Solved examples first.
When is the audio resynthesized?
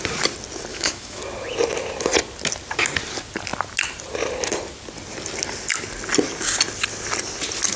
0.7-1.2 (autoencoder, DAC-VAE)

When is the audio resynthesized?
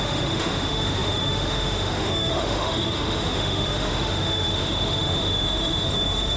0.0-6.4 (autoencoder, DAC-VAE)